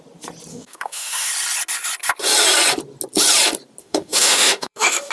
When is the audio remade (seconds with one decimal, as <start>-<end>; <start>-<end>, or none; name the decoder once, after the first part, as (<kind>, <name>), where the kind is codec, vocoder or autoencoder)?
0.5-1.3 (autoencoder, DAC-VAE); 3.8-5.1